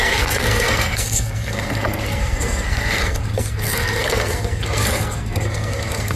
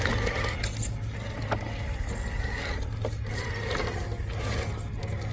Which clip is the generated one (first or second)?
first